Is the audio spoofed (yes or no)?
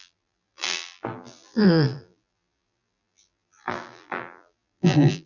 yes